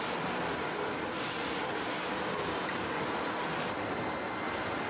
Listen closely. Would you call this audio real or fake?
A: real